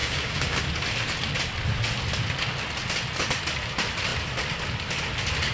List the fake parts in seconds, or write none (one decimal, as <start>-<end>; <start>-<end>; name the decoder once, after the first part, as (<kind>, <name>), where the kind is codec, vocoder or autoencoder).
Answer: 0.0-0.6 (codec, DAC)